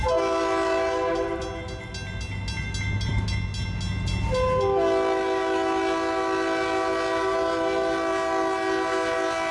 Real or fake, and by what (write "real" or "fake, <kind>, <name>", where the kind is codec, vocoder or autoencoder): real